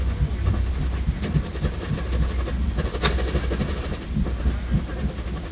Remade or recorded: recorded